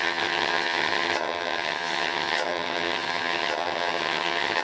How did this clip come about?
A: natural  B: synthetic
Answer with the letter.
B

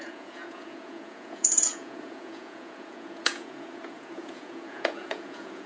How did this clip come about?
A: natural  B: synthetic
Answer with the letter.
B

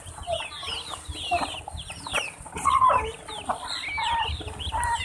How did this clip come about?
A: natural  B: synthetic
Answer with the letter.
B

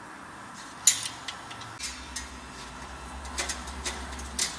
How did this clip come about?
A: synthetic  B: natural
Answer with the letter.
B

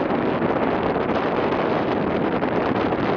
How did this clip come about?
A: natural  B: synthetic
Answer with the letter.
A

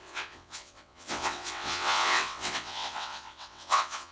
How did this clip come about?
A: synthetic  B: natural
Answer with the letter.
A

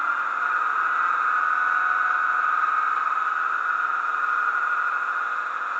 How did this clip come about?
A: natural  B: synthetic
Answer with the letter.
A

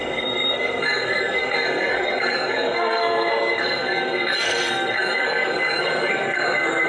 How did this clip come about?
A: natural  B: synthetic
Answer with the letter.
B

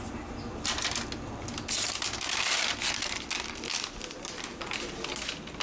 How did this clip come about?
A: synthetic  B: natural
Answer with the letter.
B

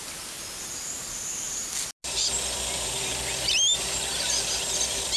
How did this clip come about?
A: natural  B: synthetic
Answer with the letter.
A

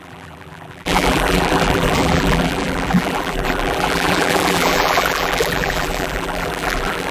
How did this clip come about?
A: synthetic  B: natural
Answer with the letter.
A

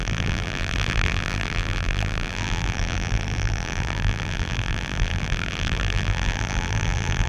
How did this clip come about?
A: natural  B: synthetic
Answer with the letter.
B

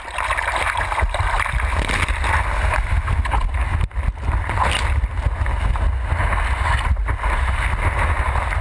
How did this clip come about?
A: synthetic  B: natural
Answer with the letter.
B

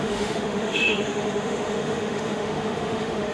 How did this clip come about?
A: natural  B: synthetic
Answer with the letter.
B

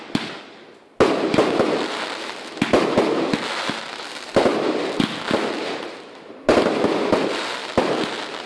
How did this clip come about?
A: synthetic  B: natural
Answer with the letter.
B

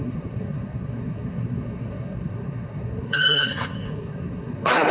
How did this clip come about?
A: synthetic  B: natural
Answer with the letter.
A